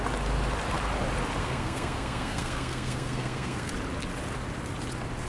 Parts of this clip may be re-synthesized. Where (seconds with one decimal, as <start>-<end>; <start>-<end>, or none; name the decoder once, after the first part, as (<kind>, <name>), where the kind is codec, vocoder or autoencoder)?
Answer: 1.4-3.7 (codec, SNAC)